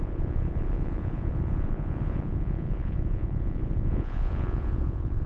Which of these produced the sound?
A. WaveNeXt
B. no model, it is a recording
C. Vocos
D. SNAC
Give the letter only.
C